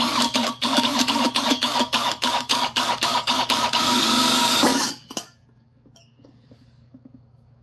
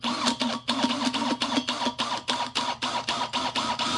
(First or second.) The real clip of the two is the second